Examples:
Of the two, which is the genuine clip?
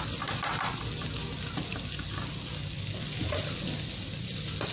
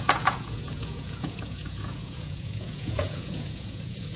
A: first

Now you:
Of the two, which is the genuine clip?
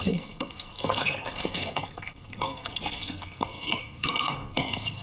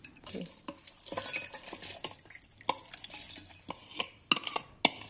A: second